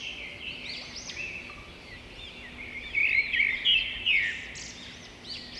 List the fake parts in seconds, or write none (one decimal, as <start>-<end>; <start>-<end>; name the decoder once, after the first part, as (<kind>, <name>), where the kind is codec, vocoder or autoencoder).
none